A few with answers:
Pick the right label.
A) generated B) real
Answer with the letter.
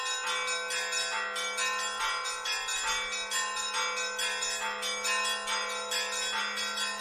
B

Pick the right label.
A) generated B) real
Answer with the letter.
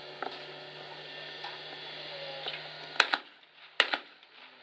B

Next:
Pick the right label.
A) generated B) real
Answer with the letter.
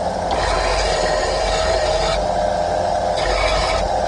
B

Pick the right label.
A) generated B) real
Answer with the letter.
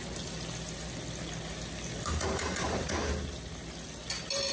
B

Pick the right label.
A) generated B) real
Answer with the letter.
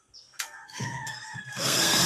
A